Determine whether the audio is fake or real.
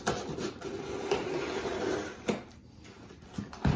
real